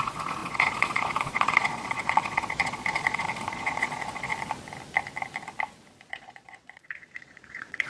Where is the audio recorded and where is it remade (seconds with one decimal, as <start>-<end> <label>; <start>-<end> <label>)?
0.0-4.3 remade; 4.3-6.1 recorded; 6.1-7.9 remade